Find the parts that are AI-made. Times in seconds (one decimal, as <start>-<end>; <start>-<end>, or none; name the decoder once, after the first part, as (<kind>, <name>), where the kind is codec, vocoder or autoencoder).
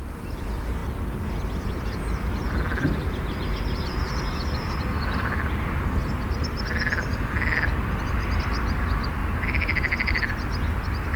0.0-0.8 (vocoder, BigVGAN v2); 1.7-6.0; 7.8-9.2; 10.3-11.2